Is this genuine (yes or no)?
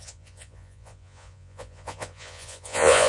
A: no